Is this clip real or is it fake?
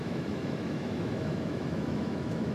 fake